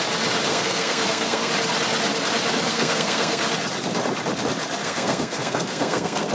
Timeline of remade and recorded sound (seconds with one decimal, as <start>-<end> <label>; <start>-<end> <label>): 0.0-0.5 recorded; 0.5-1.5 remade; 1.5-2.7 recorded; 2.7-3.4 remade; 3.4-4.8 recorded; 4.8-6.3 remade